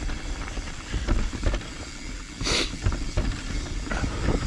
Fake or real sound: fake